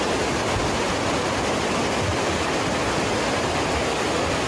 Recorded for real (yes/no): yes